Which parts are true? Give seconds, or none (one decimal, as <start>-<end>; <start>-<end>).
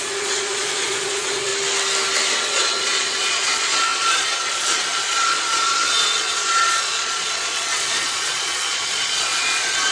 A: 1.5-2.3